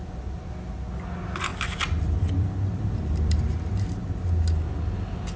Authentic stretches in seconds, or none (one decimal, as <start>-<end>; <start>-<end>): 0.0-1.5; 3.7-5.4